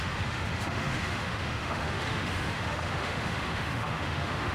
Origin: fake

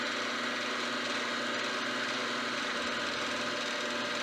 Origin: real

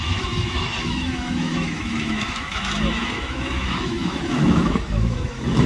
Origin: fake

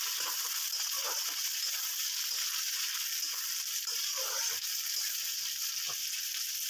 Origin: real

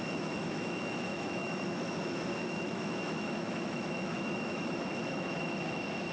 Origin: fake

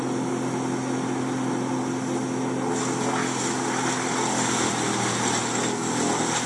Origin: real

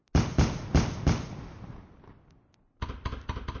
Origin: real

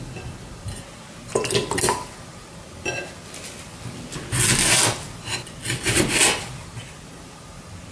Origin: real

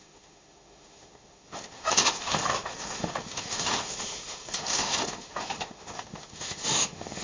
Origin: fake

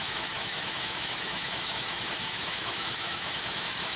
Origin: fake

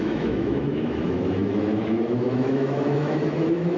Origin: fake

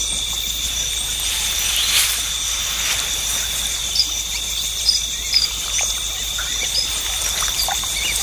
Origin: real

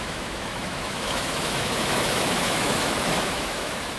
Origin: fake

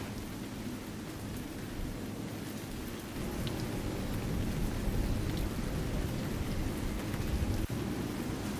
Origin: real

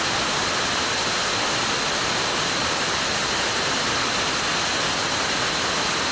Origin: real